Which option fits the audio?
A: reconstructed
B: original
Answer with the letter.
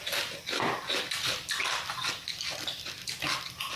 B